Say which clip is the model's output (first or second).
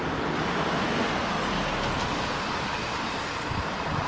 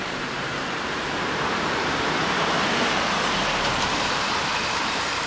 second